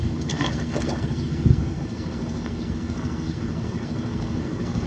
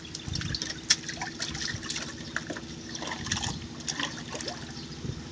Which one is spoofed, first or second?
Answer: first